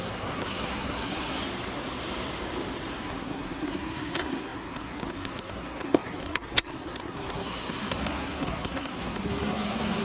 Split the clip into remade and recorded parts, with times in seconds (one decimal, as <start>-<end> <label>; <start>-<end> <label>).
0.0-1.4 remade; 1.4-2.9 recorded; 2.9-10.0 remade